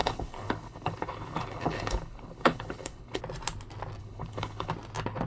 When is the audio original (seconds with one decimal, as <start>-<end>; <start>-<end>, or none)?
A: 3.2-4.0; 4.7-5.3